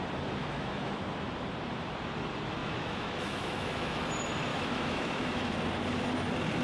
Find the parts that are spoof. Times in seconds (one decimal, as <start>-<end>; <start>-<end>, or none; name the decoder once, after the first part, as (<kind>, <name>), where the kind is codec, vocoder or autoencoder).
0.4-1.0 (autoencoder, DAC-VAE); 2.6-4.0; 4.5-5.5